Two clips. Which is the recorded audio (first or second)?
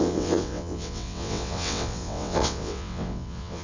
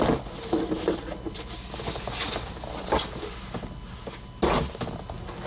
second